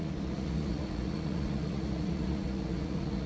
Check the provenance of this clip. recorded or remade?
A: remade